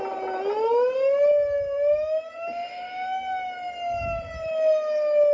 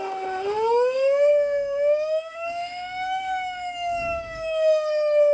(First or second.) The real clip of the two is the first